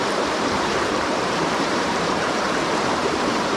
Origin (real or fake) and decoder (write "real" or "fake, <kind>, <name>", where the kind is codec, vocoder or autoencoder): fake, vocoder, BigVGAN v2